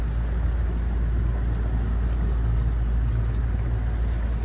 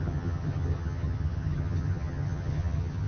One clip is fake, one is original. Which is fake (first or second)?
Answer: second